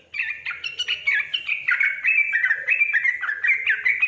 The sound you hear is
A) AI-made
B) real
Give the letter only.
B